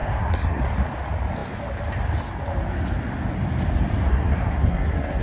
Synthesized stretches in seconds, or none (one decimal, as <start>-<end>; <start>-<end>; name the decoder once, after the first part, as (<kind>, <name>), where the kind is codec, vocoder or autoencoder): 0.0-0.6 (codec, SNAC); 4.1-5.2